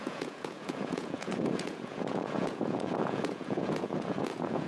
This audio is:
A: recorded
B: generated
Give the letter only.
B